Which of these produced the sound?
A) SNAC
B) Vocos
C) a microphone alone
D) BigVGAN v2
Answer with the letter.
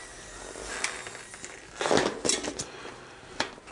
C